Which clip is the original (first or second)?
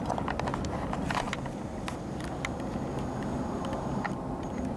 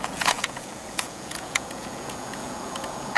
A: first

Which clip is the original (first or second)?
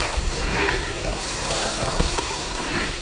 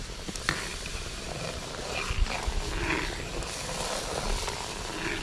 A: second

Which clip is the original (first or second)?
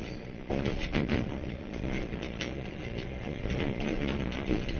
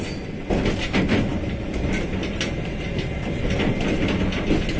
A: second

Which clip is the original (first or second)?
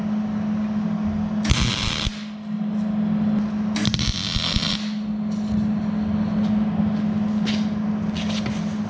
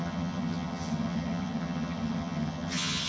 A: first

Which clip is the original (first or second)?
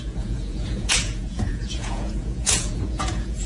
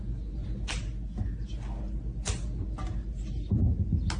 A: second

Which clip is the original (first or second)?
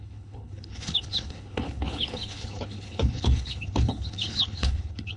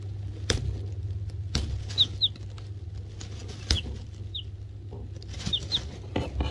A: second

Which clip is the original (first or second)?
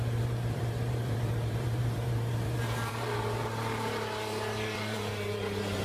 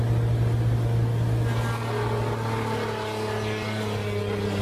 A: second